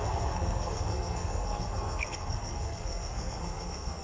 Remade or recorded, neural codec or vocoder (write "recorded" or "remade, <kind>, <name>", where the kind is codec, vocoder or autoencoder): remade, codec, SNAC